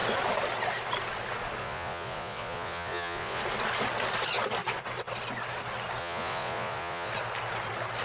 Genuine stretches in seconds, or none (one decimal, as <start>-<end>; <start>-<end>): 0.0-1.6; 3.4-6.0; 7.1-8.0

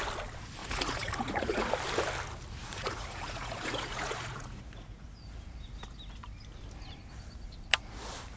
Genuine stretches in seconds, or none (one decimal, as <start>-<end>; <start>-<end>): 0.0-0.6; 1.7-2.6; 5.2-8.4

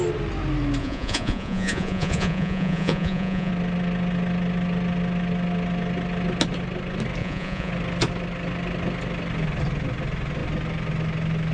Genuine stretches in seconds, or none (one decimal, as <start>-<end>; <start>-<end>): 0.0-0.8; 3.5-7.2; 7.7-11.5

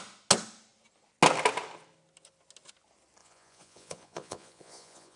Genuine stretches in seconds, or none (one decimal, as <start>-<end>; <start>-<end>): 0.0-3.2

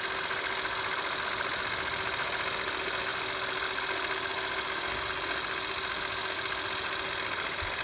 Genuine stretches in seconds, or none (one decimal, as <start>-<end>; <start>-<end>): 0.0-7.8

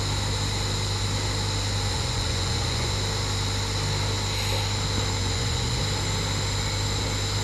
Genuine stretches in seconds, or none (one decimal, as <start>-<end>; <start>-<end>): 0.0-1.9; 2.9-5.2; 5.8-7.4

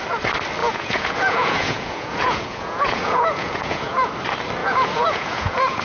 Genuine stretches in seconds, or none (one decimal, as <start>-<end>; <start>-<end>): 0.0-0.6; 4.1-4.6